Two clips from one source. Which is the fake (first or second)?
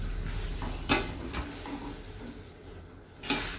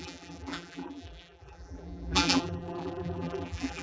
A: second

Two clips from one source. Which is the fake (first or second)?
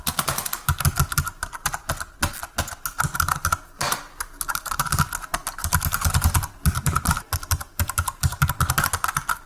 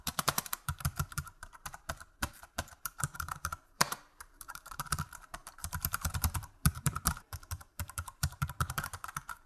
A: second